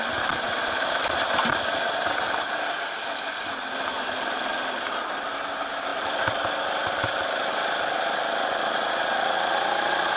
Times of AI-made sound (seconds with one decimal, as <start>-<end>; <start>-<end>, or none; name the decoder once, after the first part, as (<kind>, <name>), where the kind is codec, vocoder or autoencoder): none